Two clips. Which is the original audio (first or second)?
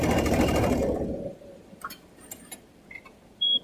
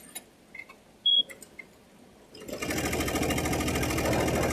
second